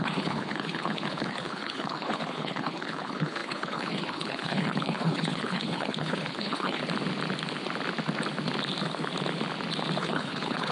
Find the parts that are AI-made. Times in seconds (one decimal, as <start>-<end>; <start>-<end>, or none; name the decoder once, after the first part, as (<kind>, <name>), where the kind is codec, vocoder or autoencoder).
0.0-6.8 (codec, HILCodec); 10.0-10.7